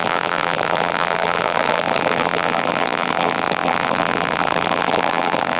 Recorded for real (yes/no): no